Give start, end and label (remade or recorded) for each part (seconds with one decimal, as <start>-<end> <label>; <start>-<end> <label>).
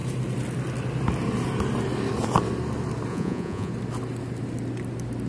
0.0-3.1 recorded; 3.1-3.7 remade; 3.7-5.3 recorded